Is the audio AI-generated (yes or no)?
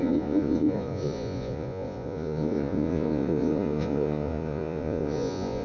yes